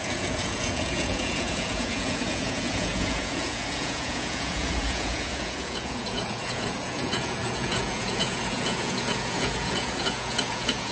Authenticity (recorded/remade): remade